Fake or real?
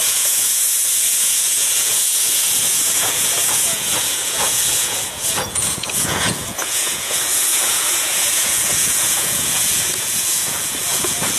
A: fake